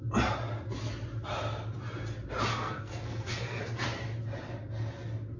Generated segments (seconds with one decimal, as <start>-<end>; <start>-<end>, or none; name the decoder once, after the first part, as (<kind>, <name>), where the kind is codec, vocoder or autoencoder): 2.5-3.6 (codec, SNAC)